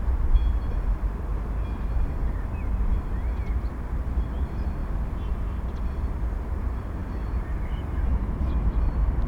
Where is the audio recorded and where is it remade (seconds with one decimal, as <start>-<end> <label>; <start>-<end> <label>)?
0.0-1.3 remade; 1.3-3.7 recorded; 3.7-4.8 remade; 4.8-6.6 recorded; 6.6-9.3 remade